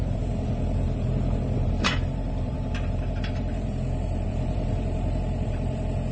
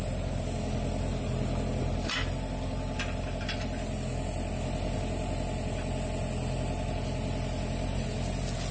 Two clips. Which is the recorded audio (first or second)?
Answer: second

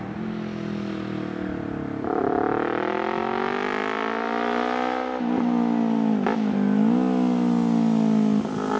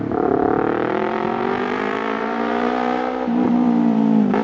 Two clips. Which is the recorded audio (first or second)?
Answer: first